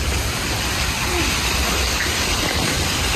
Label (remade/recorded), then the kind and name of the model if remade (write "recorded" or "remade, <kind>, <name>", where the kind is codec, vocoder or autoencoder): recorded